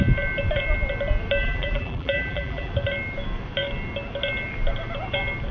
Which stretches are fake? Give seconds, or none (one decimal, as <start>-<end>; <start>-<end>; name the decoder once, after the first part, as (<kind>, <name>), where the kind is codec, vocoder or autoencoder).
1.4-2.7 (vocoder, BigVGAN v2)